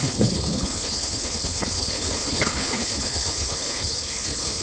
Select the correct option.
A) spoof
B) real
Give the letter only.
A